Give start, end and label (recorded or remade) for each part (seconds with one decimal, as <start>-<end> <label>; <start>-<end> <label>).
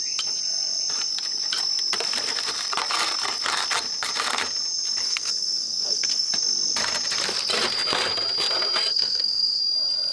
0.0-5.0 recorded; 5.0-6.3 remade; 6.3-8.9 recorded; 8.9-9.6 remade; 9.6-10.1 recorded